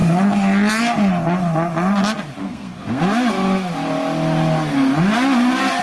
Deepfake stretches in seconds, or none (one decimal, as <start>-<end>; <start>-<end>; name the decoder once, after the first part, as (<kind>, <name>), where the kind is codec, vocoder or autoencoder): 2.4-3.0 (codec, SNAC)